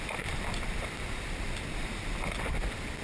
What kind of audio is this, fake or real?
real